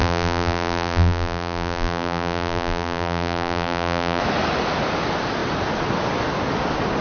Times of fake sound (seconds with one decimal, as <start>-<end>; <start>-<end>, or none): 0.0-4.2